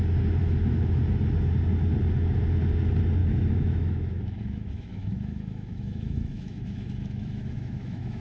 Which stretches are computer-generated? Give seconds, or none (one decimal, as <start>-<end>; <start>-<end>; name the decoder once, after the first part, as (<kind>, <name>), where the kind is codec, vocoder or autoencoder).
0.4-1.0 (autoencoder, DAC-VAE); 3.2-8.2